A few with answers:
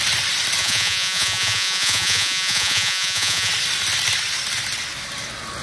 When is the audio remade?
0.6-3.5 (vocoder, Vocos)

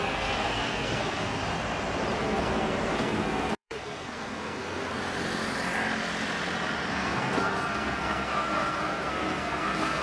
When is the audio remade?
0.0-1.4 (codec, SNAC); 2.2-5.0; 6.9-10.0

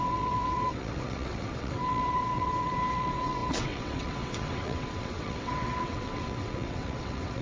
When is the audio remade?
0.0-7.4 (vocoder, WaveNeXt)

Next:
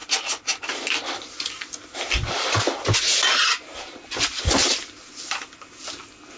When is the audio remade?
none